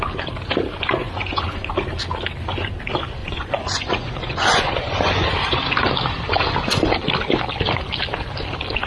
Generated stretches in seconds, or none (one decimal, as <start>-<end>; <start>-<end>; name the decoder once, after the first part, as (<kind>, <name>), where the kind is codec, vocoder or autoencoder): 1.0-1.7 (vocoder, Vocos); 3.2-5.3

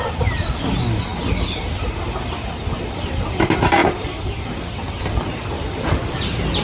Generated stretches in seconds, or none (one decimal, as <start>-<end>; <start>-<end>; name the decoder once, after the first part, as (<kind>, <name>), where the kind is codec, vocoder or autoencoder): none